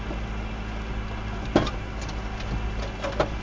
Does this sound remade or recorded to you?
recorded